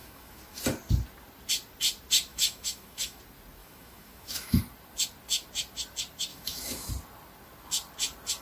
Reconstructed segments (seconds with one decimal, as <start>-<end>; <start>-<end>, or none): 0.0-0.6; 2.3-3.2; 3.6-4.6; 6.3-6.9